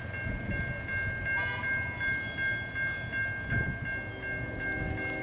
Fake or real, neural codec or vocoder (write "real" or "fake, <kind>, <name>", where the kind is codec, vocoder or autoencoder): real